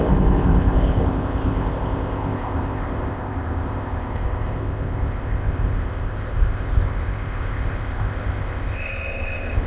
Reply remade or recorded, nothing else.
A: remade